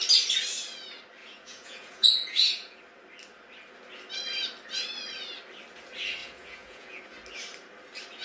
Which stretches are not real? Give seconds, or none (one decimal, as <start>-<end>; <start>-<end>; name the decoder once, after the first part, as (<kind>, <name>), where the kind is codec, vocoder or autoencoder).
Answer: 1.2-2.8 (vocoder, Vocos); 6.2-7.0